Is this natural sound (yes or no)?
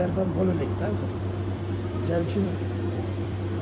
no